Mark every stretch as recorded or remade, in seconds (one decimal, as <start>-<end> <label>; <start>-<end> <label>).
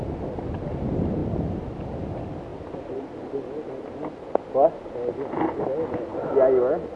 0.0-2.5 recorded; 2.5-4.4 remade; 4.4-7.0 recorded